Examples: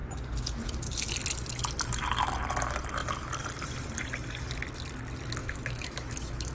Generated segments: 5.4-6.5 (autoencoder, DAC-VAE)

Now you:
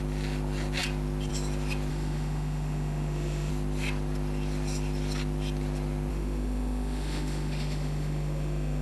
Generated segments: 1.9-3.5 (autoencoder, DAC-VAE); 6.1-8.8

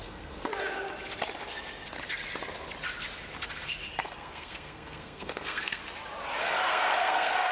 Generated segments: 0.0-0.5 (codec, SNAC); 3.9-5.8; 6.4-7.5

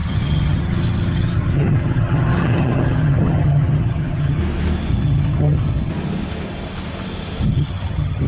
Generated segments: 0.0-4.4 (vocoder, HiFi-GAN); 4.9-5.9; 7.5-8.3

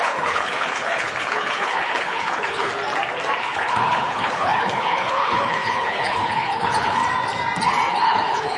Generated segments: 0.0-2.7 (codec, HILCodec); 3.4-7.0; 7.9-8.6

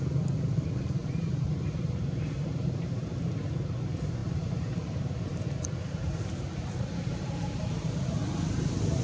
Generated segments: 1.0-3.3 (vocoder, BigVGAN v2); 4.2-8.0